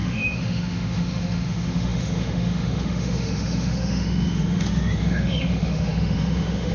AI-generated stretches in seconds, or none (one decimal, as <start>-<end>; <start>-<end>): 0.0-6.7